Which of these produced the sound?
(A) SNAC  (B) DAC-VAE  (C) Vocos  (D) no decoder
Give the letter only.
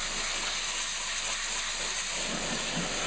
D